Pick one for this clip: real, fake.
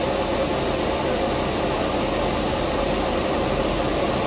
real